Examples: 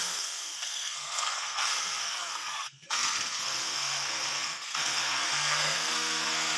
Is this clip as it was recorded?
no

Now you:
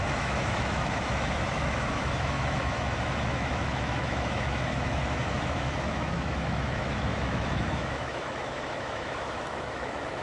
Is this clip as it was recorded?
no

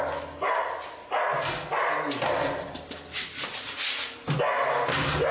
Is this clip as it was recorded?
yes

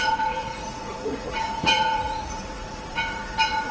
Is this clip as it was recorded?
no